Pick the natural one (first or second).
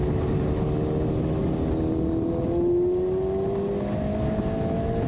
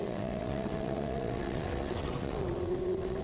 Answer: first